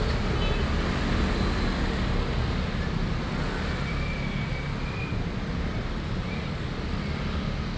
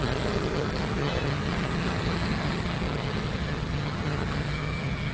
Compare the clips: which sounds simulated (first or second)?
second